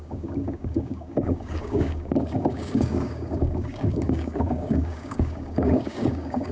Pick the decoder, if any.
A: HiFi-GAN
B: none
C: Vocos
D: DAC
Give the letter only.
D